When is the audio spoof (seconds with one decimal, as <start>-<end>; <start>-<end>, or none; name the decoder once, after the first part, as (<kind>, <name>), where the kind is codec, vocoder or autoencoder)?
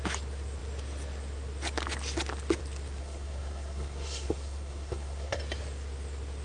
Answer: 3.0-5.4 (codec, SNAC)